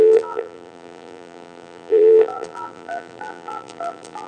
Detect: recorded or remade remade